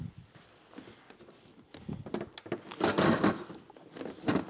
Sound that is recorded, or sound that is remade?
recorded